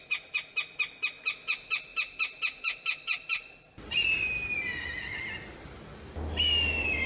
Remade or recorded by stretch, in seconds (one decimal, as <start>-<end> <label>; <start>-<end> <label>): 0.0-7.1 recorded

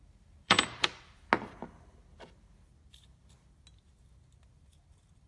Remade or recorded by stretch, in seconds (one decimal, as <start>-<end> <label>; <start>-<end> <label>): 0.0-1.3 remade; 1.3-4.5 recorded; 4.5-5.3 remade

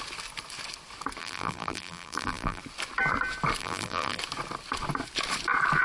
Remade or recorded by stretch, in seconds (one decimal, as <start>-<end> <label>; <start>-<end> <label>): 0.0-1.2 recorded; 1.2-2.6 remade; 2.6-3.6 recorded; 3.6-4.2 remade; 4.2-5.8 recorded

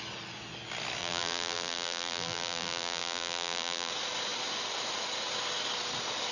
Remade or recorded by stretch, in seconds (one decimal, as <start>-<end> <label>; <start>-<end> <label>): 0.0-1.0 recorded; 1.0-3.9 remade; 3.9-6.3 recorded

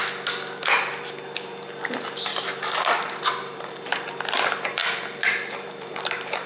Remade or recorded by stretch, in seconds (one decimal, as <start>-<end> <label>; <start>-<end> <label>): 0.0-2.3 recorded; 2.3-4.1 remade; 4.1-4.8 recorded; 4.8-6.5 remade

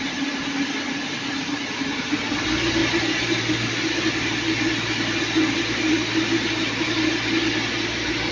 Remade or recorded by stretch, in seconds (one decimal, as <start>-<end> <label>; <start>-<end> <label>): 0.0-8.3 recorded

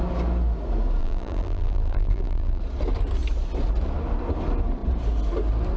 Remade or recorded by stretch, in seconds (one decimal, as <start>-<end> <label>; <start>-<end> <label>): 0.0-1.0 recorded; 1.0-2.6 remade; 2.6-5.8 recorded

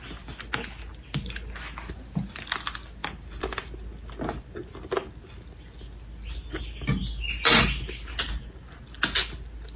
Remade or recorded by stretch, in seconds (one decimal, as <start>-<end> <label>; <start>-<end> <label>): 0.0-3.0 recorded; 3.0-3.7 remade; 3.7-9.8 recorded